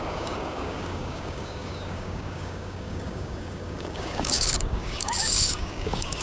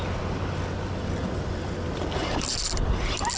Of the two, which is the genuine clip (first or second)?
second